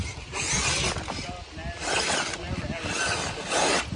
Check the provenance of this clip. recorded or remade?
recorded